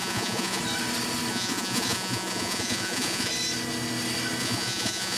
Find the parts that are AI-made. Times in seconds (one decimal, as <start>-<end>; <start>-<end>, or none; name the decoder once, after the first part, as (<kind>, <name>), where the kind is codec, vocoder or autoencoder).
0.0-0.6 (vocoder, Vocos); 1.3-3.3; 4.4-5.2